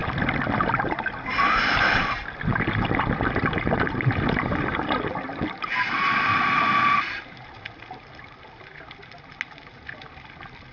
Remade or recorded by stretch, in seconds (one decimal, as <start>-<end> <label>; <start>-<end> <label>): 0.0-10.7 recorded

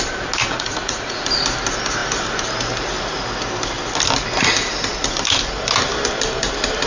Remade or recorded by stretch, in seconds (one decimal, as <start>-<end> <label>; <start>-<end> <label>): 0.0-0.4 recorded; 0.4-1.3 remade; 1.3-6.9 recorded

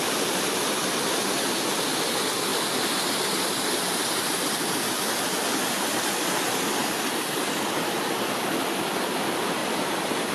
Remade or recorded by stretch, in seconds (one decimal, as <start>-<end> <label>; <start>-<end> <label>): 0.0-6.8 recorded; 6.8-7.7 remade; 7.7-9.6 recorded; 9.6-10.3 remade

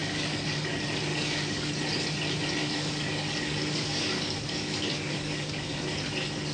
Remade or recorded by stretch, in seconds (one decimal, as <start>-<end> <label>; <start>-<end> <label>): 0.0-0.7 remade; 0.7-1.1 recorded; 1.1-1.7 remade; 1.7-2.6 recorded; 2.6-5.8 remade; 5.8-6.5 recorded

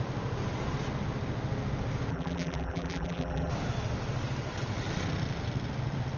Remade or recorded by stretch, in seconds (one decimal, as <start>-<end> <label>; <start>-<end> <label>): 0.0-2.1 recorded; 2.1-3.5 remade; 3.5-6.2 recorded

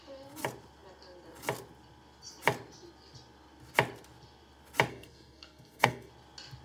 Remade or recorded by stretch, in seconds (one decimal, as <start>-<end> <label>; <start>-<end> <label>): 0.0-4.9 recorded; 4.9-6.1 remade; 6.1-6.6 recorded

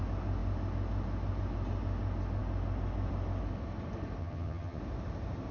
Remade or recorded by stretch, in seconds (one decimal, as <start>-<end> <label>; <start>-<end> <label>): 0.0-4.2 recorded; 4.2-4.8 remade; 4.8-5.5 recorded

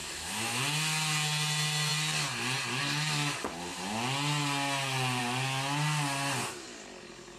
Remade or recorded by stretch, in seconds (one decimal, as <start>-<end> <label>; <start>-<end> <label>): 0.0-0.6 remade; 0.6-7.4 recorded